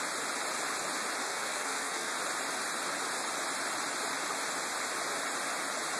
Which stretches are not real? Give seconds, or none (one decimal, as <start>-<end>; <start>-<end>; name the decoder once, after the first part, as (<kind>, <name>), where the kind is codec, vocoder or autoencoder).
1.2-2.1 (codec, SNAC)